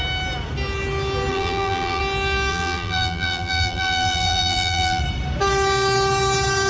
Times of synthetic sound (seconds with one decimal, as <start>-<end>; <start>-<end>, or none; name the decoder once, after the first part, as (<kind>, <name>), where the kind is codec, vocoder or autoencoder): 1.3-2.0 (vocoder, BigVGAN v2); 2.5-5.0